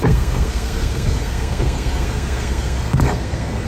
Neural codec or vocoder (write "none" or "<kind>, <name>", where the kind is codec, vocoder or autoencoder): codec, SNAC